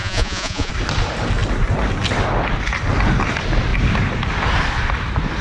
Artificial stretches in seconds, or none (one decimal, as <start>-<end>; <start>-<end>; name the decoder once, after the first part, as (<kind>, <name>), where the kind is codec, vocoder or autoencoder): 0.0-0.7 (vocoder, Vocos)